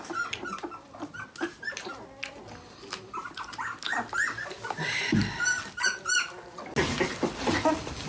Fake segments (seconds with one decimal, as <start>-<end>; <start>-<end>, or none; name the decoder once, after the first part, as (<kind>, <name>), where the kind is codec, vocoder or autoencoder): none